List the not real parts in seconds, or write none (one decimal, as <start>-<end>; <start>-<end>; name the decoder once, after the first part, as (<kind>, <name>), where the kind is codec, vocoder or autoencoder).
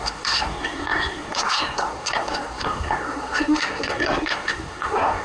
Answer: 0.0-5.2 (codec, SNAC)